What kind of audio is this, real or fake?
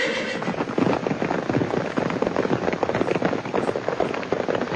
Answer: real